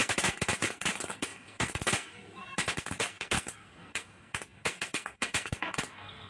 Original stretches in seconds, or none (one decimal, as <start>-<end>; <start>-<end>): none